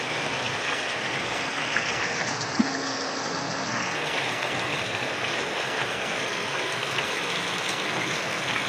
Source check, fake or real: fake